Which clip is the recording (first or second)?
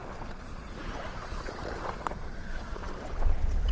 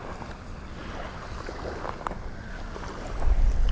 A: second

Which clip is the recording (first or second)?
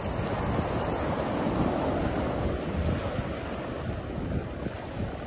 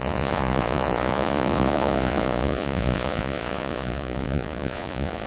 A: first